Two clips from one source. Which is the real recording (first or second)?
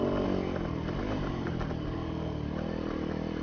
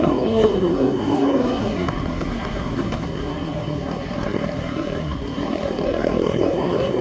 first